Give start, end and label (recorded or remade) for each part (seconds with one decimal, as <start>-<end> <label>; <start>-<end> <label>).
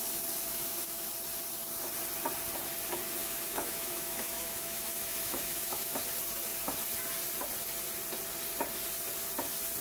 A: 0.0-0.5 recorded; 0.5-1.1 remade; 1.1-3.2 recorded; 3.2-6.0 remade; 6.0-9.8 recorded